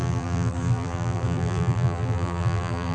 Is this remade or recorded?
remade